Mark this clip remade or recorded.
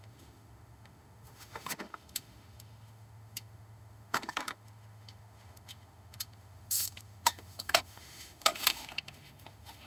remade